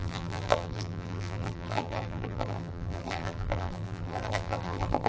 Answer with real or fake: fake